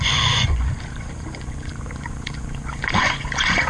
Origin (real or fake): fake